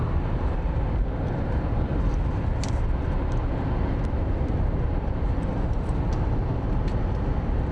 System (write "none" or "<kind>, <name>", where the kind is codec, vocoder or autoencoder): none